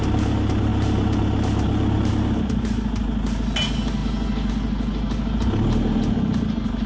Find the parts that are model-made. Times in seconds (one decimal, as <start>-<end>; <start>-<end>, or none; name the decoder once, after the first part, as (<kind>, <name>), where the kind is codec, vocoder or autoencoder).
none